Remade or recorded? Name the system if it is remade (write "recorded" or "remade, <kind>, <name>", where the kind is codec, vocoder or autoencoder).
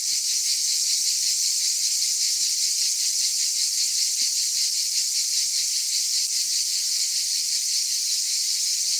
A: recorded